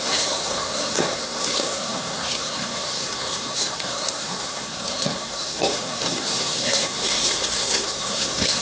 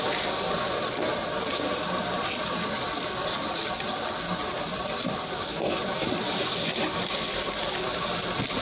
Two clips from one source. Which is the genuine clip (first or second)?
second